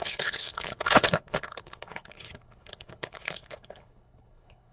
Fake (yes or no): yes